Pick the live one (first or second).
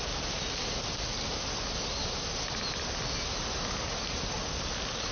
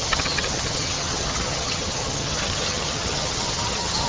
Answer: first